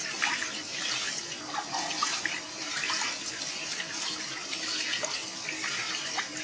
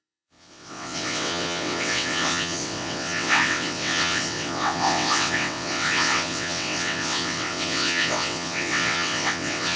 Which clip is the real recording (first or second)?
first